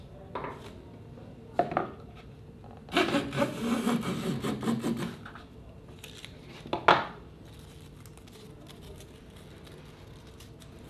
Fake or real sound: real